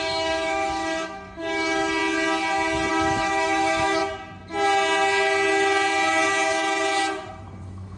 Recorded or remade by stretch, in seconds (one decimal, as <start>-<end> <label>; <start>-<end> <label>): 0.0-2.0 remade; 2.0-2.9 recorded; 2.9-4.0 remade; 4.0-7.3 recorded; 7.3-8.0 remade